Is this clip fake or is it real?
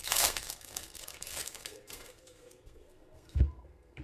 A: fake